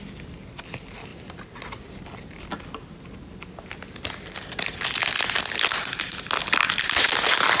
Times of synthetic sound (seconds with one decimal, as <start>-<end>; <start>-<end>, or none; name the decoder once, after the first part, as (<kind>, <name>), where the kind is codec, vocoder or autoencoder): none